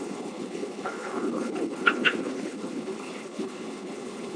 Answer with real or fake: fake